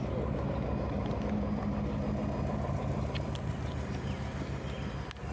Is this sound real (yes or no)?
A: yes